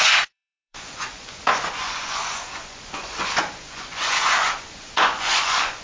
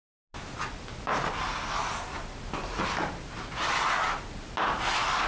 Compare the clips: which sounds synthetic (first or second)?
first